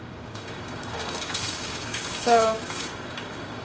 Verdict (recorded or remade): remade